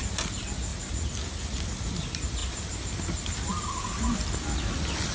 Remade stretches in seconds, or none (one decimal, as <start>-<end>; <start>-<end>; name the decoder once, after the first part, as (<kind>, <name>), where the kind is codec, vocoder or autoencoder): none